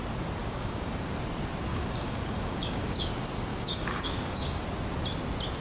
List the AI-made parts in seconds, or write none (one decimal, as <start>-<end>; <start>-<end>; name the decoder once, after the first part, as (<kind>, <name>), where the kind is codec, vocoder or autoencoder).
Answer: 0.4-0.9 (codec, DAC); 1.7-3.1; 3.5-4.6